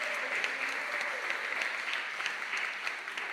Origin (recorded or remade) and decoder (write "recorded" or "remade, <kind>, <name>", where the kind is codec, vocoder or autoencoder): recorded